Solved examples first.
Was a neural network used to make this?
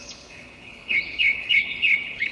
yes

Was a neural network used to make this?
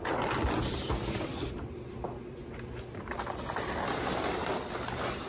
no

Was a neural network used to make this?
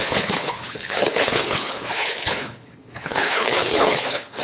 yes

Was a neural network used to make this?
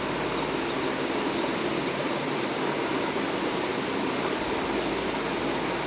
no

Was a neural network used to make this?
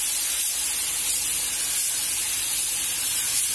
no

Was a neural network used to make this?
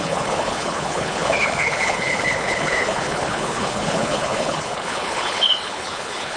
yes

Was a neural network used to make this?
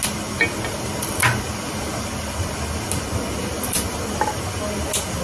no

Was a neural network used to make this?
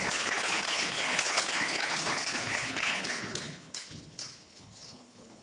yes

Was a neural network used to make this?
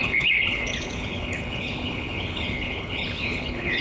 yes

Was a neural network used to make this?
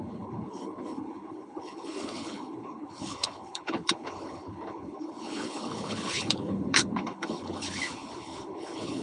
yes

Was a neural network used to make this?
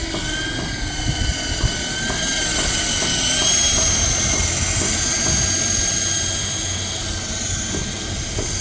no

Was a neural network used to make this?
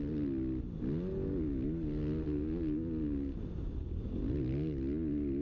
no